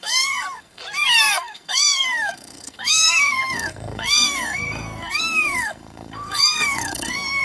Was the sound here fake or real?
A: fake